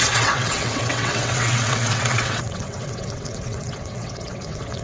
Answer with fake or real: fake